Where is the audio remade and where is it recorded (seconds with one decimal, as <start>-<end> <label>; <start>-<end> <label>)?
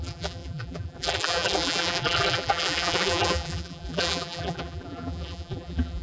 0.0-6.0 remade